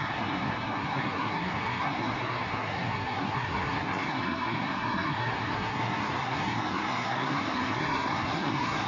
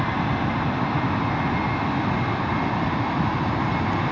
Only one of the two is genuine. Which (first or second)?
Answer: second